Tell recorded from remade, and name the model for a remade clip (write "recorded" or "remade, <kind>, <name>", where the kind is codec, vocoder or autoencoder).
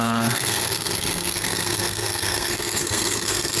remade, codec, SNAC